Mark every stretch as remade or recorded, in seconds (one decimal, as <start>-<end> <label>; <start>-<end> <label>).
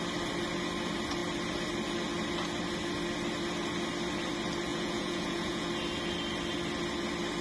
0.0-4.7 recorded; 4.7-5.7 remade; 5.7-7.4 recorded